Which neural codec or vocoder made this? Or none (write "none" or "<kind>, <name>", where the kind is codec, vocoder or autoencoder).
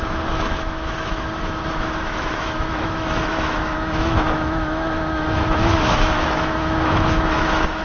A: autoencoder, DAC-VAE